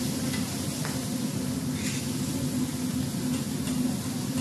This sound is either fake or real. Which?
real